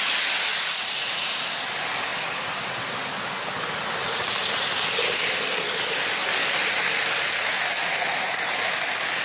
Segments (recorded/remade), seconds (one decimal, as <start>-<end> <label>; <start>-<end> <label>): 0.0-0.5 recorded; 0.5-1.4 remade; 1.4-7.8 recorded; 7.8-8.5 remade; 8.5-9.2 recorded